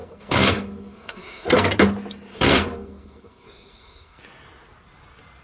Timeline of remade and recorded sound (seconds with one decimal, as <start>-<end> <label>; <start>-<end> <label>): 0.0-1.7 remade; 1.7-2.3 recorded; 2.3-4.2 remade; 4.2-5.4 recorded